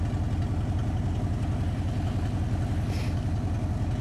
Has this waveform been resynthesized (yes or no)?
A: no